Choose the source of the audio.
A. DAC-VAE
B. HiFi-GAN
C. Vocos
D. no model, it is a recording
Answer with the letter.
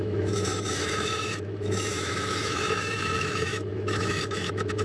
A